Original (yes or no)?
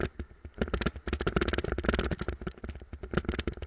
yes